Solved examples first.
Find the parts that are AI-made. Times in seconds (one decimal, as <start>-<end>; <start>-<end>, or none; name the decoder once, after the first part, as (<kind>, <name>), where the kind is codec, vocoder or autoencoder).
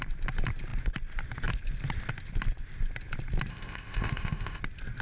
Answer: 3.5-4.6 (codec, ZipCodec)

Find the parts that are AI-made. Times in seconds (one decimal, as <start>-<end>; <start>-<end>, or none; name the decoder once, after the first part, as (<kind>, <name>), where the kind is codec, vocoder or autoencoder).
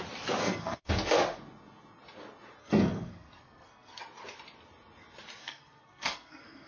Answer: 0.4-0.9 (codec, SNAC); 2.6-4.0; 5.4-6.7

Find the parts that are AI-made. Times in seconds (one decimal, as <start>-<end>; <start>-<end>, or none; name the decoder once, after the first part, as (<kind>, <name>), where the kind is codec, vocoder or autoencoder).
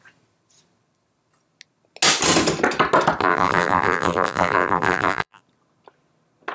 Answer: 3.2-5.4 (vocoder, BigVGAN v2)